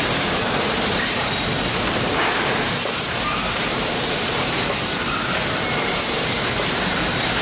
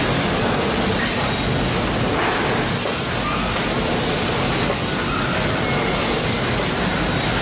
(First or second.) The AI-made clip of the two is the first